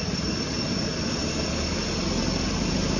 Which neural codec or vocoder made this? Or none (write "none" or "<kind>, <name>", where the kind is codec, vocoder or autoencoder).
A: none